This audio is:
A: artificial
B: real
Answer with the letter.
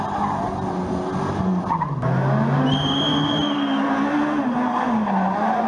B